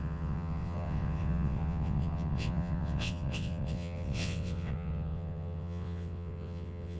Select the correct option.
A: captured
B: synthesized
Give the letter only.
B